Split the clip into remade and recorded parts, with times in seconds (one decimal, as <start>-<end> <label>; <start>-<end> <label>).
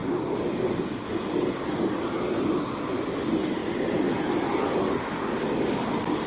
0.0-6.3 recorded